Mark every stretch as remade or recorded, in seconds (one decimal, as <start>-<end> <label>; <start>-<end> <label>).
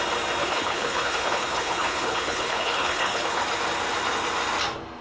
0.0-0.4 recorded; 0.4-3.4 remade; 3.4-5.0 recorded